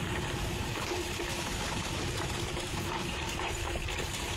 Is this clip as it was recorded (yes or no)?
no